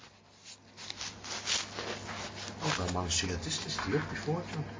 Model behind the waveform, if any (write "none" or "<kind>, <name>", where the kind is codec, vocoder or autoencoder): none